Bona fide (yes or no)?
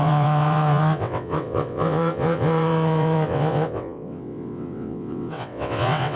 no